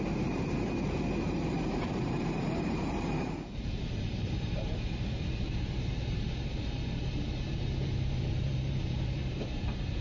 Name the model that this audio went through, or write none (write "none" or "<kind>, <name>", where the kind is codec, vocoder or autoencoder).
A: vocoder, BigVGAN v2